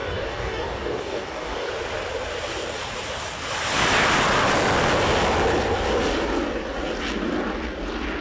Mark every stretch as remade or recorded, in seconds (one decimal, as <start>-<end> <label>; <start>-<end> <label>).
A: 0.0-1.7 remade; 1.7-8.2 recorded